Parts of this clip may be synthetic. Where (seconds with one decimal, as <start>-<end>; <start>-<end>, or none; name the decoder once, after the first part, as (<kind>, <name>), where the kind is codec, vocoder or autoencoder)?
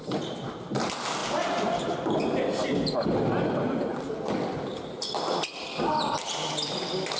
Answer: none